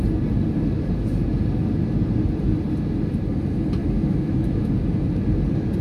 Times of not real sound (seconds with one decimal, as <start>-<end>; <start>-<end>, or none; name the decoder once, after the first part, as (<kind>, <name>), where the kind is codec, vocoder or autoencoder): 3.8-4.7 (autoencoder, DAC-VAE)